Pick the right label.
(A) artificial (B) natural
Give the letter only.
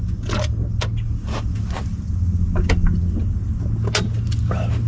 B